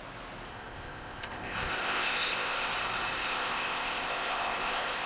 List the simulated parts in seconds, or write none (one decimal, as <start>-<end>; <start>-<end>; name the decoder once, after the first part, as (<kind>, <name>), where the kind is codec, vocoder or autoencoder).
0.5-2.7 (codec, ZipCodec); 3.2-5.1